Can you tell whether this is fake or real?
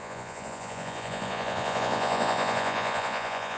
fake